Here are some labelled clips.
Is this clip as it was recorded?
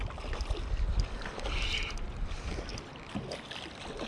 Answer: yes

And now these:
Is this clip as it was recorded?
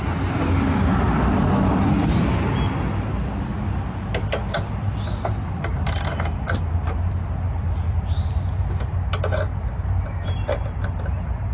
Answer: yes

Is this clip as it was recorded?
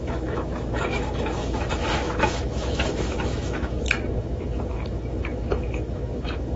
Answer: no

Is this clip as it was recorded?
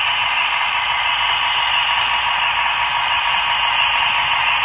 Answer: yes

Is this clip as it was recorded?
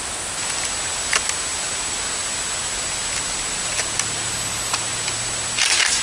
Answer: yes